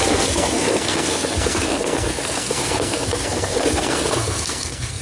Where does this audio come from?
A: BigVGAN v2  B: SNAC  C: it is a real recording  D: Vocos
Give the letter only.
B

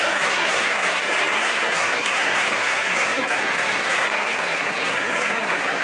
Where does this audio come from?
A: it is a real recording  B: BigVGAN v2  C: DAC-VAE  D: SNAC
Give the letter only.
D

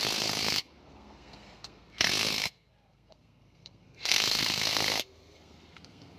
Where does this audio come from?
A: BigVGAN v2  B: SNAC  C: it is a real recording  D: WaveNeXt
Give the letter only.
B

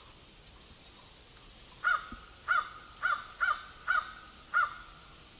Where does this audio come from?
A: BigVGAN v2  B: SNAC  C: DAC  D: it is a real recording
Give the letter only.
D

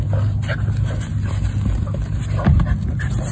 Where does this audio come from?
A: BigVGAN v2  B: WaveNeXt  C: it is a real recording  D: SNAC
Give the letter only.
C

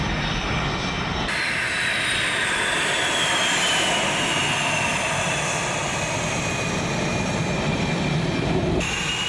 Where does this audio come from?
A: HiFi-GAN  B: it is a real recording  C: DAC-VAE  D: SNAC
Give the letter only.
B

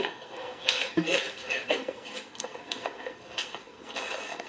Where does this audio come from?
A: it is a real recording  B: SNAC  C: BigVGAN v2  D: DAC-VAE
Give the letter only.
B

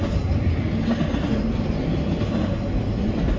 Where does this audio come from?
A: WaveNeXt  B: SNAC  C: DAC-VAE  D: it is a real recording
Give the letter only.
D